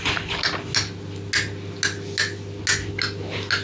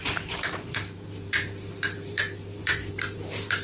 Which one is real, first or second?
first